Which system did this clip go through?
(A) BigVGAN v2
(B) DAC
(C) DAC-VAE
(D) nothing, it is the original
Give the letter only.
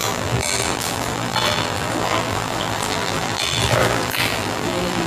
A